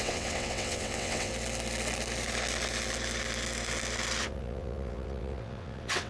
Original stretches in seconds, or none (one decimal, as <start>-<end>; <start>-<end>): 1.3-4.2